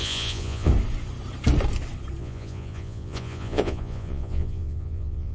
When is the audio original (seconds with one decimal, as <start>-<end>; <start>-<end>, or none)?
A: 0.7-2.2